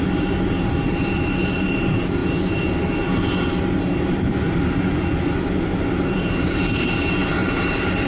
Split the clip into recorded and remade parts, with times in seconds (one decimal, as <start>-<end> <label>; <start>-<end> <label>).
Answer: 0.0-2.2 remade; 2.2-6.1 recorded; 6.1-8.1 remade